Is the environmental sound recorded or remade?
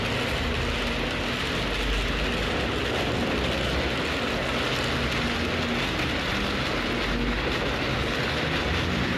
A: recorded